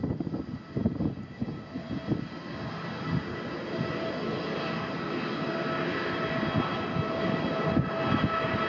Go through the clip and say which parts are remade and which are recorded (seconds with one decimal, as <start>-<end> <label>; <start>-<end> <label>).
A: 0.0-8.7 recorded